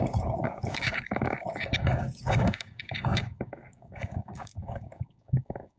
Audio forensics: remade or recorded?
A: remade